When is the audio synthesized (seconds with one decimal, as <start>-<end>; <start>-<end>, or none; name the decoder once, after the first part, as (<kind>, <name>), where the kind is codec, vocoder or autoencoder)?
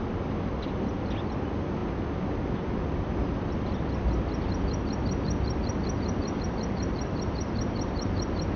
none